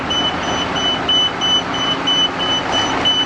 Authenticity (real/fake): real